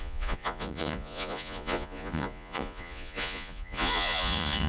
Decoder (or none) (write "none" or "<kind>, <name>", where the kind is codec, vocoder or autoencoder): vocoder, Vocos